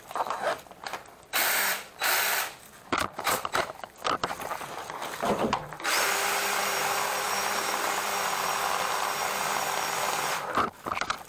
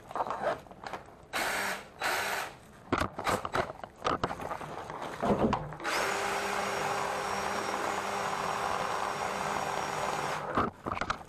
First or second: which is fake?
first